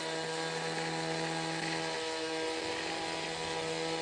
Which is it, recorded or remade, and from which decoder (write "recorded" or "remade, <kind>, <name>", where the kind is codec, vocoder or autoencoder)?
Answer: recorded